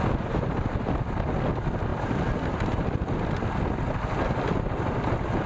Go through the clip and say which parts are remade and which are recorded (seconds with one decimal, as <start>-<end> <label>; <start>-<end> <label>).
0.0-5.5 recorded